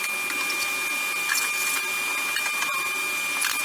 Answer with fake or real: real